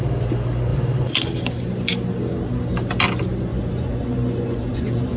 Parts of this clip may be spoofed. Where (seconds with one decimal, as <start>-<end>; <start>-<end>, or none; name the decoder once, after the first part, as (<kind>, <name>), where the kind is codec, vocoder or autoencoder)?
3.5-5.2 (vocoder, Vocos)